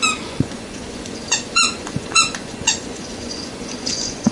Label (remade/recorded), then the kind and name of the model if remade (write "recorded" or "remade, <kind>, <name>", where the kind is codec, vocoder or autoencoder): remade, vocoder, Vocos